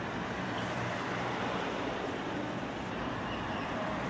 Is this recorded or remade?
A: remade